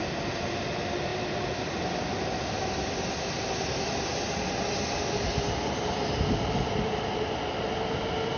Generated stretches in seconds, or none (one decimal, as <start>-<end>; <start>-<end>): none